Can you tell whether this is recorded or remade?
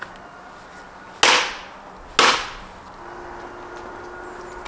recorded